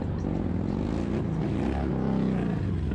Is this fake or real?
real